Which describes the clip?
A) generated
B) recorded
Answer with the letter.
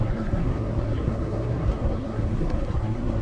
A